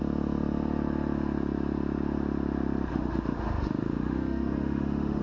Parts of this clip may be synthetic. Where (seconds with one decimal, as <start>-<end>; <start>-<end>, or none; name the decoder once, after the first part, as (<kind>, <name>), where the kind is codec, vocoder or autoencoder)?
2.9-5.2 (autoencoder, DAC-VAE)